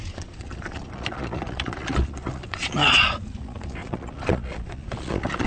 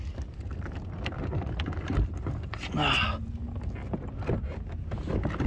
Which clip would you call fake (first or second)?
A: first